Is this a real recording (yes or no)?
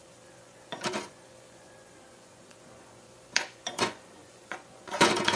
no